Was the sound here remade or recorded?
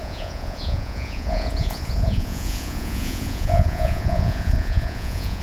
remade